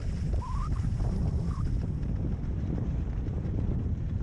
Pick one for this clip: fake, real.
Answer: fake